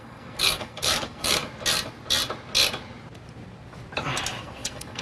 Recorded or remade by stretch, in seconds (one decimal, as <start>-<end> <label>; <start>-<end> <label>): 0.0-1.4 remade; 1.4-4.4 recorded; 4.4-5.0 remade